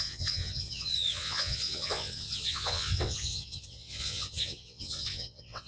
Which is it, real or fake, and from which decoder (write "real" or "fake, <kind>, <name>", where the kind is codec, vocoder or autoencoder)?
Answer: fake, vocoder, WaveNeXt